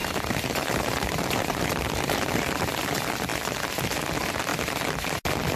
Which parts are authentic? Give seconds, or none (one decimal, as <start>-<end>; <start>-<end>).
2.6-5.6